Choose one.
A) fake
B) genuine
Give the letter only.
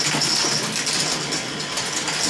B